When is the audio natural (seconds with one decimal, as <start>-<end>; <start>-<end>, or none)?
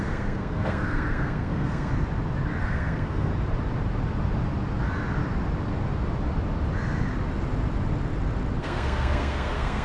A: 1.9-2.6; 3.3-8.6